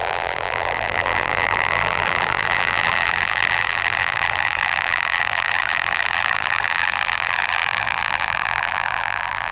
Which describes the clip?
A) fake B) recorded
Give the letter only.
A